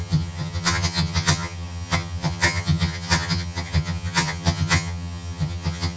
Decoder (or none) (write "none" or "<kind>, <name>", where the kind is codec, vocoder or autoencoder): vocoder, HiFi-GAN